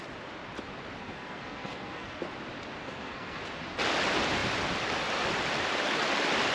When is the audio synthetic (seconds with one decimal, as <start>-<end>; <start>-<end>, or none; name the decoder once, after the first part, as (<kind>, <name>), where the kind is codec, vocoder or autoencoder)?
1.0-2.2 (codec, SNAC); 2.8-3.4